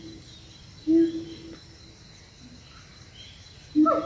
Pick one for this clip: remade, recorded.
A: recorded